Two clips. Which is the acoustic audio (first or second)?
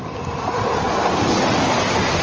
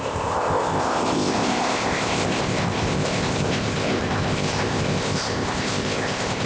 first